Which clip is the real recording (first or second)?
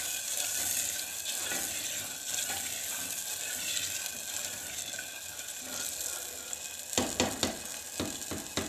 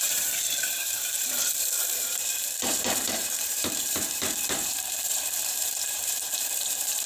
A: first